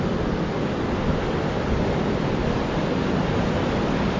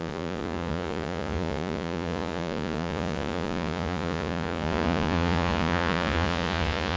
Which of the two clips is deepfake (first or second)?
second